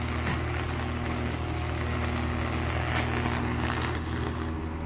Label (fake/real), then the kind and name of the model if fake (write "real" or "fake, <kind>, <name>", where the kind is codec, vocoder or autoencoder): real